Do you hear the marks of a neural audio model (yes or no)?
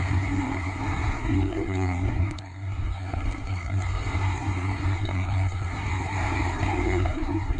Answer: yes